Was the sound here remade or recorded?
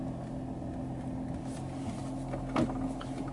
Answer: recorded